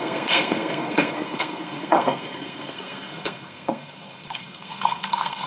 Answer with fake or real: fake